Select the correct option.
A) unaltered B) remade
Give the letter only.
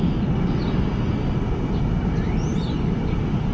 A